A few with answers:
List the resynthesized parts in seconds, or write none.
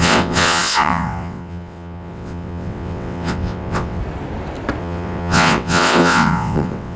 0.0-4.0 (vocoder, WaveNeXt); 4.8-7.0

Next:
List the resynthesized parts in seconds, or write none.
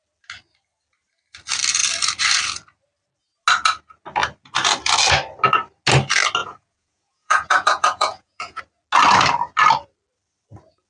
6.4-8.6 (vocoder, Vocos)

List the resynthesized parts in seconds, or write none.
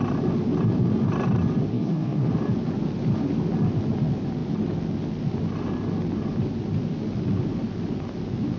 1.7-2.3 (codec, SNAC)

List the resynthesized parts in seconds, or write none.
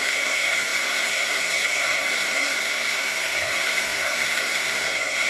0.0-5.3 (codec, SNAC)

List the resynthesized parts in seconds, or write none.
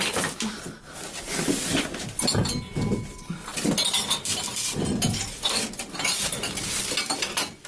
none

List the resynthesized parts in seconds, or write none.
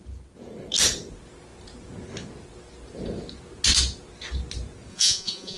4.9-5.6 (vocoder, Vocos)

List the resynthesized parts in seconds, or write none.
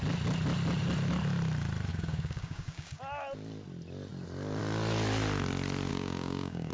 1.9-3.0 (codec, DAC); 5.9-6.7